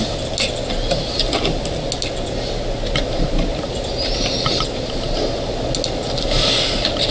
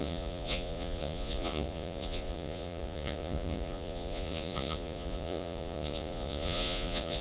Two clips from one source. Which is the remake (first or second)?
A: second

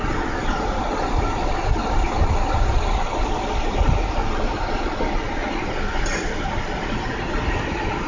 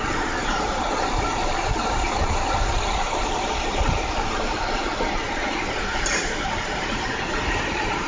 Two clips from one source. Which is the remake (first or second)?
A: second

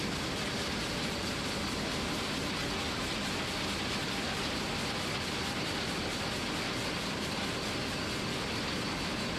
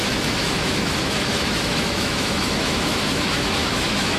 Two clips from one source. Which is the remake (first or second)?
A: second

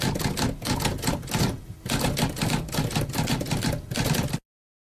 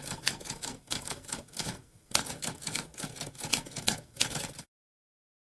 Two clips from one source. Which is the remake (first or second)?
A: second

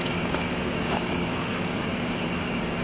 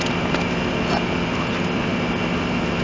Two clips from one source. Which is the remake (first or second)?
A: first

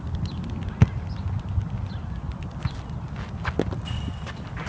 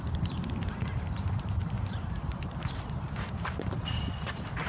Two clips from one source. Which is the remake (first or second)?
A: second